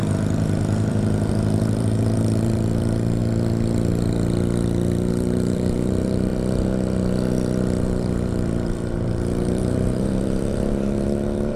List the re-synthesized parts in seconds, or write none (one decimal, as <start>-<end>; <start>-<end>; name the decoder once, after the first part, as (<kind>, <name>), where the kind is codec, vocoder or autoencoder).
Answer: 0.0-3.2 (vocoder, BigVGAN v2); 5.1-6.3; 7.8-11.6